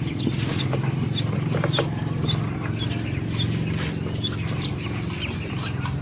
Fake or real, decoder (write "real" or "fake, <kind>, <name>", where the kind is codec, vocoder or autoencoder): real